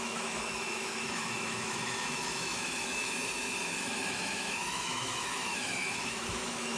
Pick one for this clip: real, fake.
fake